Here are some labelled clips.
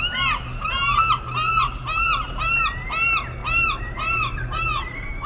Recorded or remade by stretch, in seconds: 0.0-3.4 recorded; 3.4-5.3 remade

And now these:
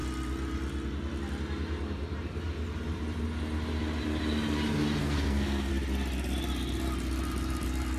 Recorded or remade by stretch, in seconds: 0.0-5.0 recorded; 5.0-5.7 remade; 5.7-8.0 recorded

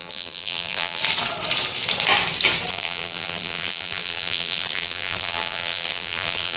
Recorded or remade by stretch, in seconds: 0.0-1.0 remade; 1.0-2.7 recorded; 2.7-6.6 remade

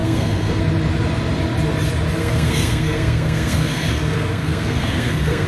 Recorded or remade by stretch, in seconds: 0.0-0.6 remade; 0.6-2.2 recorded; 2.2-5.5 remade

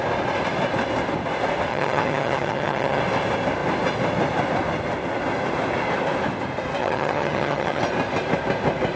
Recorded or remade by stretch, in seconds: 0.0-1.7 recorded; 1.7-3.0 remade; 3.0-6.8 recorded; 6.8-7.8 remade; 7.8-9.0 recorded

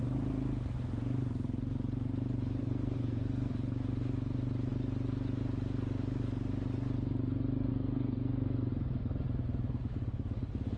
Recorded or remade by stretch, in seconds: 0.0-2.6 recorded; 2.6-3.5 remade; 3.5-7.7 recorded; 7.7-8.7 remade; 8.7-10.8 recorded